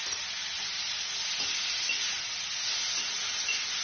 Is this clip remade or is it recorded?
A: recorded